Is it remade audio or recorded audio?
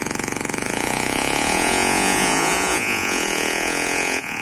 remade